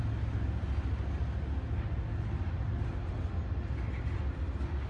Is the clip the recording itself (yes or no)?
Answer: yes